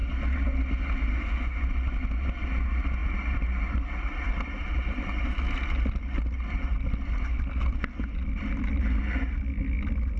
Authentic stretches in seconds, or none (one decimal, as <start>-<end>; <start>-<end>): 0.0-1.1; 1.6-10.2